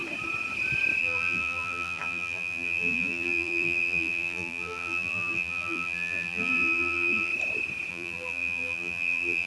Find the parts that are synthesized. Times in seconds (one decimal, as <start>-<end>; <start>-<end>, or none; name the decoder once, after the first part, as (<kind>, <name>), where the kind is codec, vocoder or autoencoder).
1.0-7.3 (vocoder, BigVGAN v2); 7.9-9.5